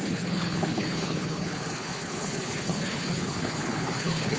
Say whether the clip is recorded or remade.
remade